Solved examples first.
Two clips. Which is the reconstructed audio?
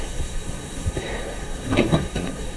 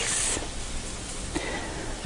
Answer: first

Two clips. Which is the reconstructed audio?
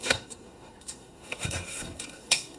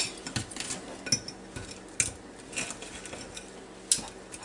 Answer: first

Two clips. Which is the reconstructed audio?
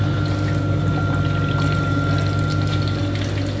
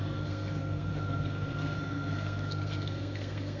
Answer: second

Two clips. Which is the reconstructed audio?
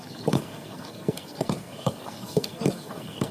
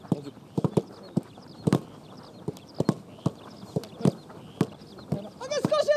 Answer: first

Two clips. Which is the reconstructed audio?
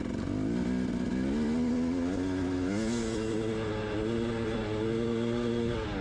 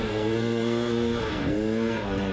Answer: second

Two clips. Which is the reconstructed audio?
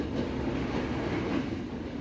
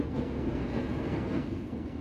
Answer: second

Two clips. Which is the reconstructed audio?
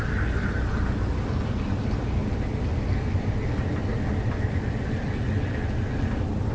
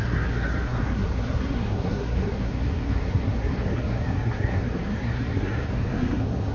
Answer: second